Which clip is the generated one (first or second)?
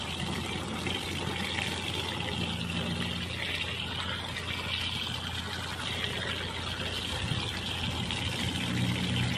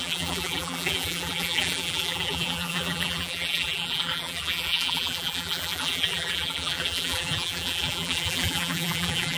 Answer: second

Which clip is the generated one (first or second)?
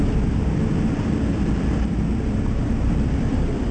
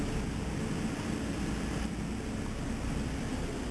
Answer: first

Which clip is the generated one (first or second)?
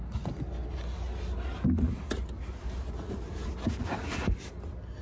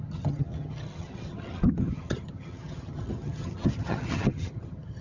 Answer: second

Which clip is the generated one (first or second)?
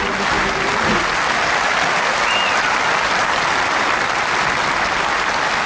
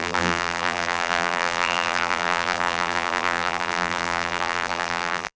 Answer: second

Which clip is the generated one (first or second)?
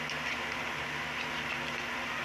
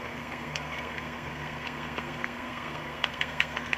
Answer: second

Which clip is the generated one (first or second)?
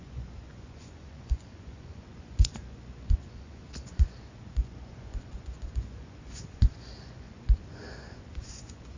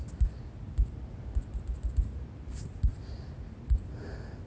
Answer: first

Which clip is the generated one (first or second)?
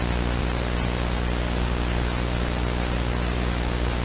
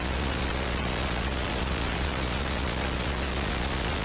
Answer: second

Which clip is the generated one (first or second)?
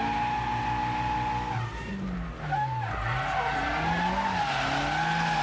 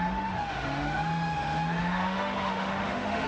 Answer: second